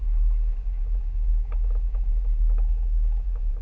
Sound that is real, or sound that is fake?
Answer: fake